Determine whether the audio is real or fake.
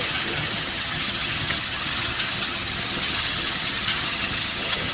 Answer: fake